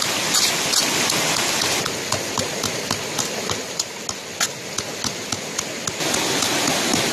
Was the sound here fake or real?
real